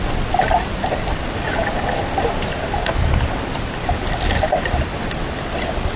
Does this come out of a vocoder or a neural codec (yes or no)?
no